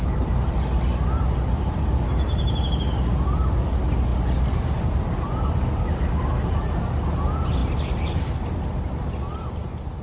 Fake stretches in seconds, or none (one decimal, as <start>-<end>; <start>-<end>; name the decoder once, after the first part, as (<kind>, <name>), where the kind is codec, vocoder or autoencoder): none

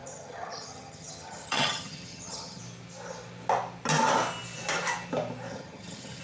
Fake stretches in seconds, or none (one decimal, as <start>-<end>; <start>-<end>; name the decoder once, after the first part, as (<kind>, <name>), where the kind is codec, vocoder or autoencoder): 0.0-2.6 (vocoder, HiFi-GAN); 5.5-6.2

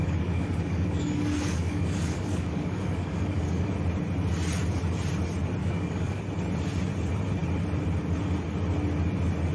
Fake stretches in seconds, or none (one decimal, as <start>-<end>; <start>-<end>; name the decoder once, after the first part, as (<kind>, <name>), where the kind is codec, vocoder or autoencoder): 0.0-3.7 (codec, DAC); 5.6-6.2

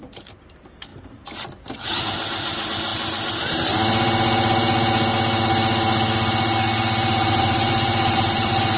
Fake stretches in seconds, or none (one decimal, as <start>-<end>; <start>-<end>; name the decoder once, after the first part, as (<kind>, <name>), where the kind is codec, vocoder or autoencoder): 0.0-0.9 (vocoder, BigVGAN v2); 2.0-2.9; 7.4-8.8

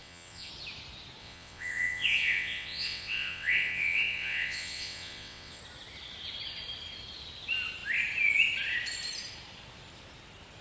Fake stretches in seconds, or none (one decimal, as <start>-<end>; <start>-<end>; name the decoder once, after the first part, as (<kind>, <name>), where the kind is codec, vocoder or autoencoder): 0.0-0.5 (vocoder, WaveNeXt); 1.2-5.6

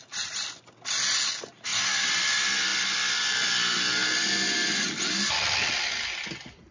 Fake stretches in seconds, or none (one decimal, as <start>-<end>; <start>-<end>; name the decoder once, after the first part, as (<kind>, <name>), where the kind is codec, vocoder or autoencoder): none